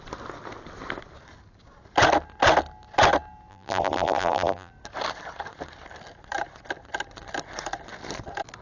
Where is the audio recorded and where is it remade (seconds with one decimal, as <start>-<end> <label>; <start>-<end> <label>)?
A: 0.0-3.5 recorded; 3.5-4.7 remade; 4.7-8.6 recorded